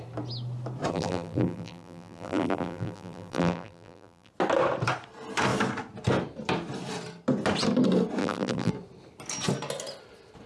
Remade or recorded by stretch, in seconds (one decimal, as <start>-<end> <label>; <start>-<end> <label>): 0.0-0.9 recorded; 0.9-4.3 remade; 4.3-8.2 recorded; 8.2-8.7 remade; 8.7-10.5 recorded